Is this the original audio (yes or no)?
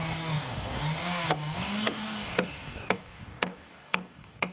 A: no